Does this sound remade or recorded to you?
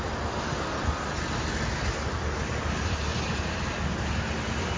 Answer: recorded